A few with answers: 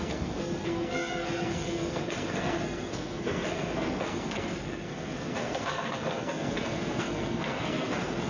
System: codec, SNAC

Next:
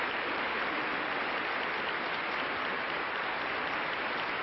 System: none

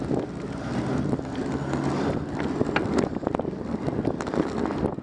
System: none